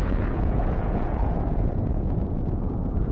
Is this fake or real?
fake